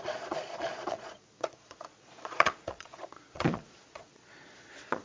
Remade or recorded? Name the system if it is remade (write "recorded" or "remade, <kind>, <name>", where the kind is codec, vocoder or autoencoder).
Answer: remade, vocoder, Vocos